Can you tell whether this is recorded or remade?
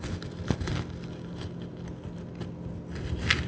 recorded